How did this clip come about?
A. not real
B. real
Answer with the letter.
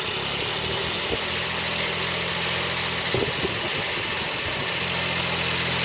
B